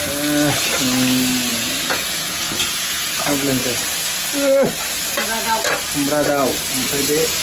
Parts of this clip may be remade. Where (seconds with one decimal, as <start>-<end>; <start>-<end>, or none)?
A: 1.5-3.1